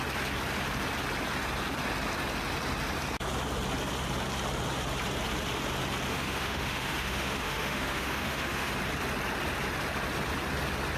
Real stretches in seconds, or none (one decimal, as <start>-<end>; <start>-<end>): 0.0-6.1; 8.7-11.0